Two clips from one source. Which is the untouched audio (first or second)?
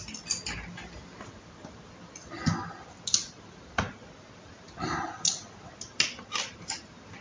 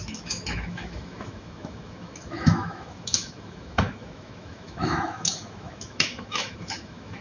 first